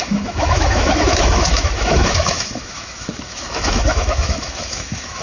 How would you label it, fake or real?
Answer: fake